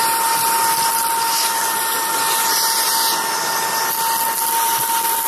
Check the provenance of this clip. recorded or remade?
recorded